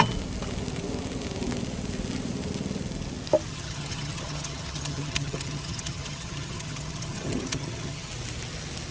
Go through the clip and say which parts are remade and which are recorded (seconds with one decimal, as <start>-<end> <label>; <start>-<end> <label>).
0.0-3.5 recorded; 3.5-8.1 remade; 8.1-8.9 recorded